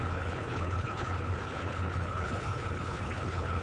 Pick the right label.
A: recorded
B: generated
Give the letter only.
B